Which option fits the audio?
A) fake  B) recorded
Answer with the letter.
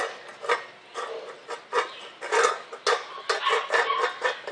B